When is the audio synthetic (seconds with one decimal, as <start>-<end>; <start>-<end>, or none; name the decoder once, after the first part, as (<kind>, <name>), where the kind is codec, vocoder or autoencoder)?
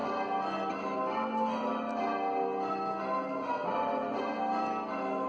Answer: none